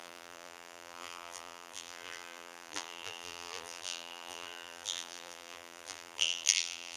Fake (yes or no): yes